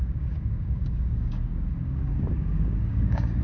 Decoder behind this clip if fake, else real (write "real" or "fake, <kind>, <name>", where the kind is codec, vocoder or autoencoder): fake, codec, DAC